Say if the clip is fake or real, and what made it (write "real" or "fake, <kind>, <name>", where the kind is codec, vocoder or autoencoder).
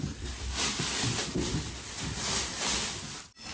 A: real